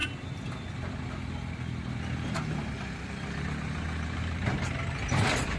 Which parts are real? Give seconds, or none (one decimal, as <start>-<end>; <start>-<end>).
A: 0.0-5.6